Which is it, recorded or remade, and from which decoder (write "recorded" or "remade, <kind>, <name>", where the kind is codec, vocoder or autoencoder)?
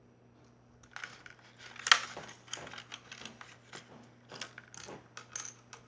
recorded